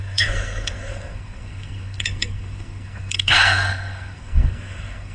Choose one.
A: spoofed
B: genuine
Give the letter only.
A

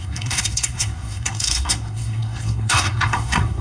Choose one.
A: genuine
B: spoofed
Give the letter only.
B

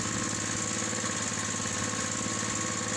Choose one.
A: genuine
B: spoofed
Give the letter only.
A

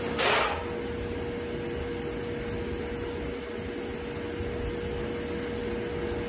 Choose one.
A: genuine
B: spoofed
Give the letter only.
A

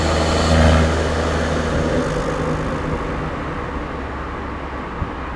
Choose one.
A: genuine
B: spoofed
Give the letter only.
A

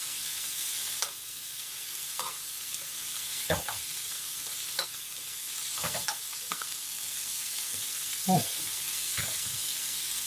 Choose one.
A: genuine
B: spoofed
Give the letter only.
B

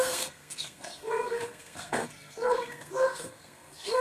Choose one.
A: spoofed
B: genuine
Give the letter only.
A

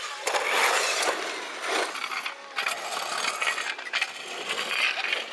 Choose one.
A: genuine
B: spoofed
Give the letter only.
A